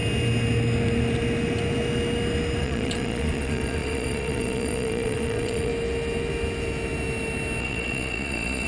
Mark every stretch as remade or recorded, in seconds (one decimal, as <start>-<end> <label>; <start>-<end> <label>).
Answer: 0.0-2.6 recorded; 2.6-5.7 remade; 5.7-7.6 recorded; 7.6-8.7 remade